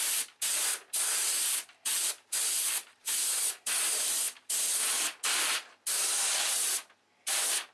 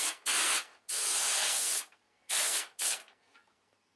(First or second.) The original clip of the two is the first